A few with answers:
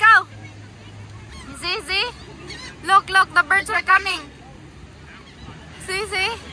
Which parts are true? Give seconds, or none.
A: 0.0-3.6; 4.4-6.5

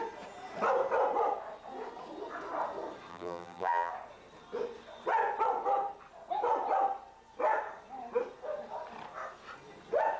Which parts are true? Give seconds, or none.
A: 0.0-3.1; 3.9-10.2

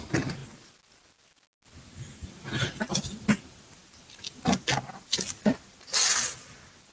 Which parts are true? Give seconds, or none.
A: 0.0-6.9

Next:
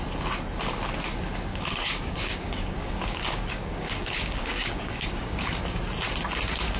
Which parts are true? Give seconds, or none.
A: 0.0-1.5; 5.6-6.8

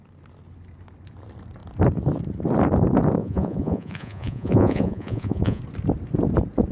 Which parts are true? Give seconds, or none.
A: 0.0-3.2; 5.6-6.7

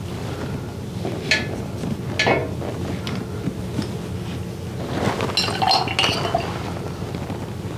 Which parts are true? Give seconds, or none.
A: 0.0-7.8

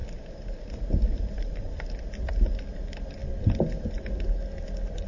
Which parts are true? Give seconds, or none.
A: 0.6-1.1; 2.0-5.1